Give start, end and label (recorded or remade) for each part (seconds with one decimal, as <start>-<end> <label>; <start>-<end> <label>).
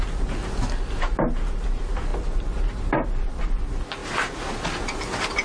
0.0-2.1 recorded; 2.1-3.4 remade; 3.4-5.4 recorded